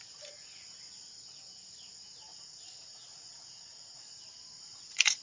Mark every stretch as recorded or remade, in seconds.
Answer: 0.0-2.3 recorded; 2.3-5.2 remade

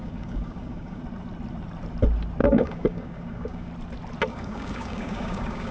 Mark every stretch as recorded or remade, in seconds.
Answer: 0.0-1.0 remade; 1.0-2.4 recorded; 2.4-3.7 remade; 3.7-4.3 recorded; 4.3-5.7 remade

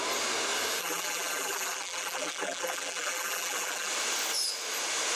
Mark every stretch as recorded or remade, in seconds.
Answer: 0.0-0.8 recorded; 0.8-3.9 remade; 3.9-5.2 recorded

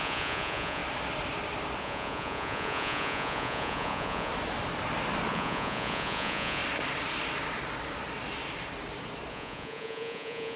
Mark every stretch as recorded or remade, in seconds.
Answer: 0.0-0.8 remade; 0.8-1.8 recorded; 1.8-4.3 remade; 4.3-5.3 recorded; 5.3-6.6 remade; 6.6-9.3 recorded; 9.3-10.6 remade

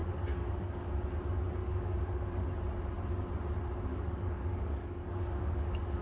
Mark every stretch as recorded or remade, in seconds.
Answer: 0.0-0.9 remade; 0.9-1.6 recorded; 1.6-2.5 remade; 2.5-3.9 recorded; 3.9-6.0 remade

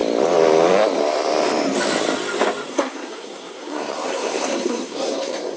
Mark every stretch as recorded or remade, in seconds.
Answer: 0.0-2.7 recorded; 2.7-5.6 remade

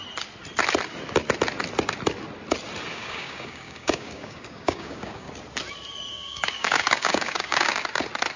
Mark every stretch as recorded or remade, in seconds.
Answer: 0.0-2.9 recorded; 2.9-5.3 remade; 5.3-6.1 recorded; 6.1-7.7 remade; 7.7-8.4 recorded

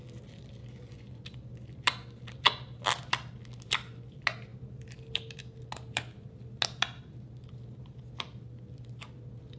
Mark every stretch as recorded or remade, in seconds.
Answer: 0.0-0.6 recorded; 0.6-1.2 remade; 1.2-9.6 recorded